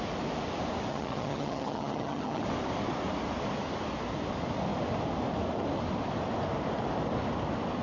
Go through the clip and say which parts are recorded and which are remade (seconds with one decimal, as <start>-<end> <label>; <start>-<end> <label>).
0.0-0.9 recorded; 0.9-2.4 remade; 2.4-7.8 recorded